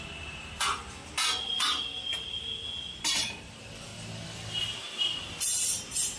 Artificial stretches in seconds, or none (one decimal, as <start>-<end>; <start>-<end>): 0.0-1.0; 3.1-3.9